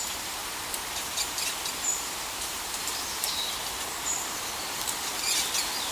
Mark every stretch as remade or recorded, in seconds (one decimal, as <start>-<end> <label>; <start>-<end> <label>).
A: 0.0-0.4 remade; 0.4-1.0 recorded; 1.0-5.9 remade